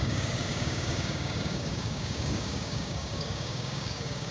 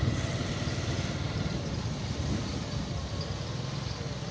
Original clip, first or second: second